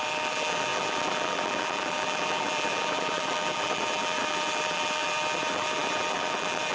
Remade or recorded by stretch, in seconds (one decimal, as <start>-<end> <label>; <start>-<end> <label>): 0.0-6.7 remade